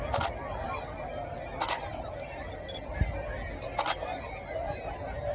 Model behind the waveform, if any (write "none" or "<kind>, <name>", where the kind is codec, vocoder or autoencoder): none